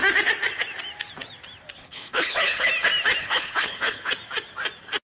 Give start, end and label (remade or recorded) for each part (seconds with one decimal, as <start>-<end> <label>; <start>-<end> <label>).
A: 0.0-1.8 recorded; 1.8-2.7 remade; 2.7-3.2 recorded; 3.2-4.1 remade; 4.1-5.0 recorded